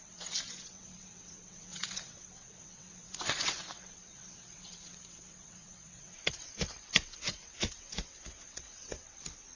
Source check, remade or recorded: remade